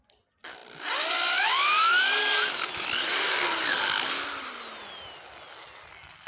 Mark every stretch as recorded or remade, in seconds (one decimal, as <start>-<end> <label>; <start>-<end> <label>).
0.0-6.3 recorded